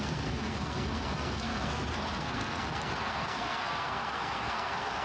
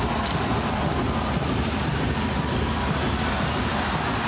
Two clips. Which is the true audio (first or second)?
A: second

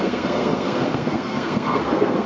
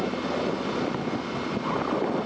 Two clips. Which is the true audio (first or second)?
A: second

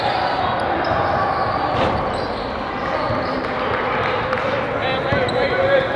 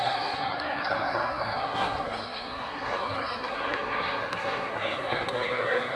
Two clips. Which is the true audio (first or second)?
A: first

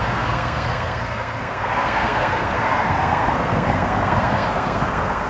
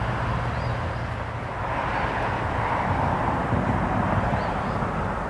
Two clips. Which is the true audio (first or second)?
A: second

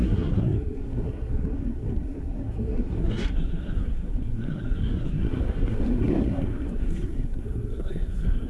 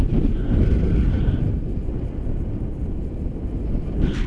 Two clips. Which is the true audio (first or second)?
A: second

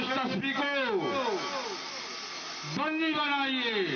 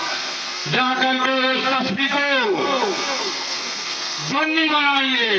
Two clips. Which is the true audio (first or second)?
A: first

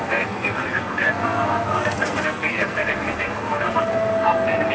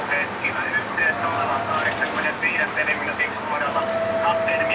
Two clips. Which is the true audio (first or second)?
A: second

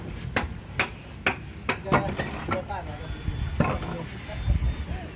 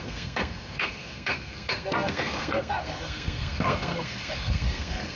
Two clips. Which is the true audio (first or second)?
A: first